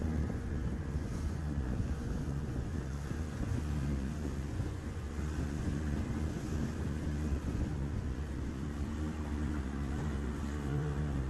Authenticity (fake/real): fake